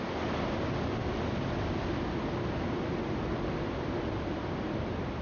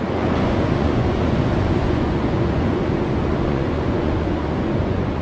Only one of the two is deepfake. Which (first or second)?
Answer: second